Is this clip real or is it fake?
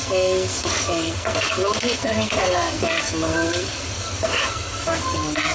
fake